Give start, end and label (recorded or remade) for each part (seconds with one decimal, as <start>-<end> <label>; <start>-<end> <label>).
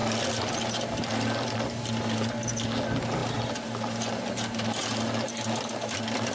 0.0-6.3 recorded